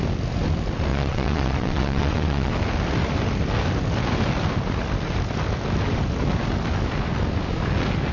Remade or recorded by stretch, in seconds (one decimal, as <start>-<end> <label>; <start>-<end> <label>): 0.0-0.9 recorded; 0.9-2.5 remade; 2.5-8.1 recorded